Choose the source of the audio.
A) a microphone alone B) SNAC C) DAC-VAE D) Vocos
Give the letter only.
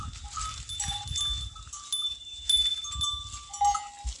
A